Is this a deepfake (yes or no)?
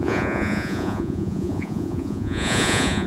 yes